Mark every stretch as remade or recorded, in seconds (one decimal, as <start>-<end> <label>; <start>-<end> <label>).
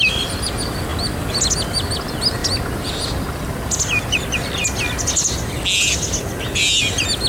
0.0-7.3 recorded